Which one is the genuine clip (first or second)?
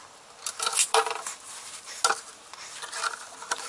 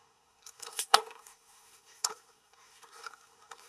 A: first